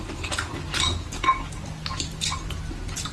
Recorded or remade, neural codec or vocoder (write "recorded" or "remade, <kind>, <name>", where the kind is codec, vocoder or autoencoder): recorded